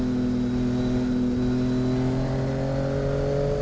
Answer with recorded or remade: recorded